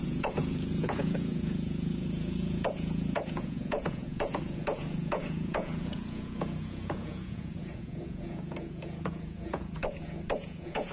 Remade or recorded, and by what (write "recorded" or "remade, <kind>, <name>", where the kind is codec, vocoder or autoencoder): remade, vocoder, Vocos